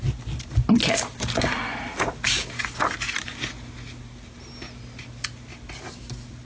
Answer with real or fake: real